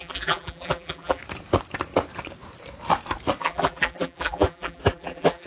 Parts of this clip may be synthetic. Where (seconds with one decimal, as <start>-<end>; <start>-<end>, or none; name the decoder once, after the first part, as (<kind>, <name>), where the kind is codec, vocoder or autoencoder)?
0.0-1.2 (vocoder, BigVGAN v2); 3.4-5.5